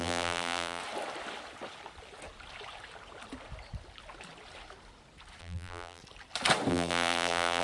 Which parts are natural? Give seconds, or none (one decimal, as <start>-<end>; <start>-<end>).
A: 0.8-5.4; 6.0-6.7